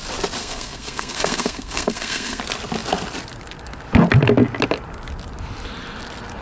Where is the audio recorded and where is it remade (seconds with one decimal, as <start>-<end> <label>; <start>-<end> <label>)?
0.0-0.4 recorded; 0.4-2.4 remade; 2.4-6.4 recorded